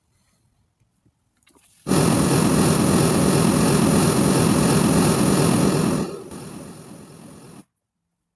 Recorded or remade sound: recorded